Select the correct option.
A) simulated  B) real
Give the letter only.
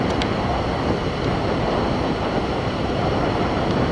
B